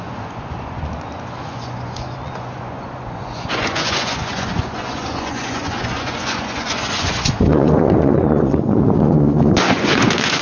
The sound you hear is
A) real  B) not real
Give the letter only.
B